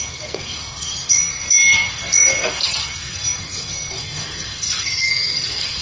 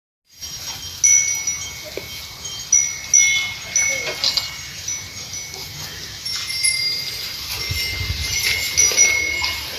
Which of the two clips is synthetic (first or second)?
first